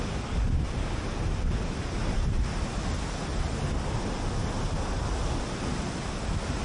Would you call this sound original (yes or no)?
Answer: yes